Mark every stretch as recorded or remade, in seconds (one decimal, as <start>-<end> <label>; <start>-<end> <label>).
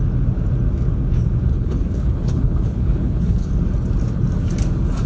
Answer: 0.0-1.5 recorded; 1.5-3.5 remade; 3.5-5.1 recorded